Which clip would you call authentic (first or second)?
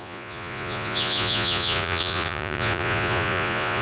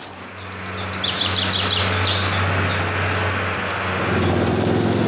second